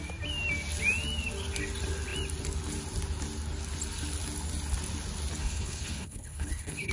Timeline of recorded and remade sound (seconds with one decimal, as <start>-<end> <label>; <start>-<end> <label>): 0.0-5.4 recorded; 5.4-6.9 remade